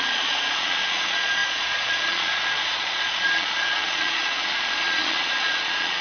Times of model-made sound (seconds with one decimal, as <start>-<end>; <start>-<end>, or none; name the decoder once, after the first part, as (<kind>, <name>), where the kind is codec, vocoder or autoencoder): 0.0-6.0 (vocoder, Vocos)